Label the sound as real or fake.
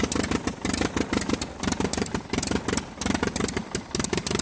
real